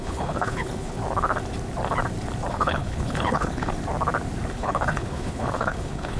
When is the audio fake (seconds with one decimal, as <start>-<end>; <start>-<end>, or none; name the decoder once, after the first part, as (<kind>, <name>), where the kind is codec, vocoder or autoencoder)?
0.0-1.0 (codec, HILCodec); 2.5-3.7; 4.5-6.2